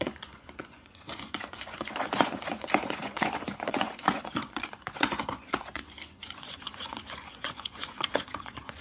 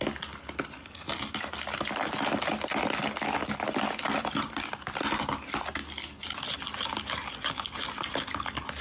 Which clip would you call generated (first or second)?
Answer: first